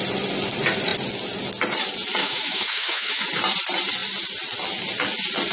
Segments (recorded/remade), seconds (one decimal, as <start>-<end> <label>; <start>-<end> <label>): 0.0-2.2 recorded; 2.2-3.2 remade; 3.2-5.5 recorded